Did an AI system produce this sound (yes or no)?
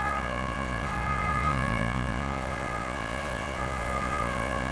yes